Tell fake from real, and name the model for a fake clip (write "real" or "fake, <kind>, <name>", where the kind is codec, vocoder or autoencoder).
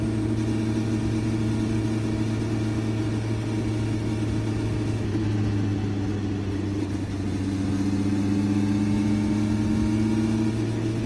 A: real